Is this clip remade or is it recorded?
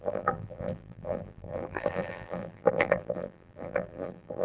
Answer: remade